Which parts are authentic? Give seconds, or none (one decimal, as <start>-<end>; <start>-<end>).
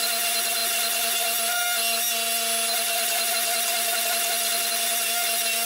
0.0-5.7